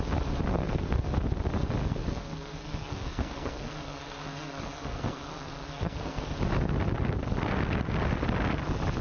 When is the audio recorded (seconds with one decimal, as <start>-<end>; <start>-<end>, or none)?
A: 0.0-0.5; 1.1-1.8; 6.4-9.0